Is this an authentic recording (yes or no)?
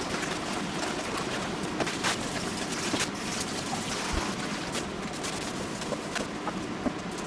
yes